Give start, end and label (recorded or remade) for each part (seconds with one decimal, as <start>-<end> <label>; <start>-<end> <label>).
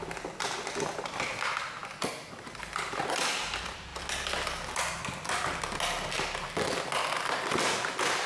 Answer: 0.0-8.3 recorded